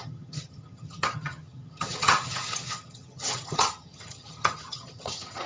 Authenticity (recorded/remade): remade